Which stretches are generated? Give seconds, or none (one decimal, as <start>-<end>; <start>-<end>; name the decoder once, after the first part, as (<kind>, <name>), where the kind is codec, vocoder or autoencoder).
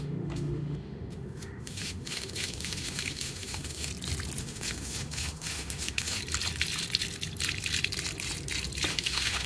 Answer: 0.0-3.9 (autoencoder, DAC-VAE); 4.4-6.2; 8.9-9.5